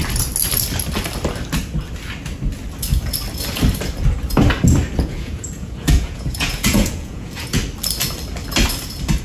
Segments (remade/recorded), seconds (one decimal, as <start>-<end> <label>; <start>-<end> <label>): 0.0-5.0 recorded; 5.0-7.6 remade; 7.6-9.2 recorded